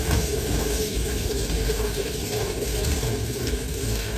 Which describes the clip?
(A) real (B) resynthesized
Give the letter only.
B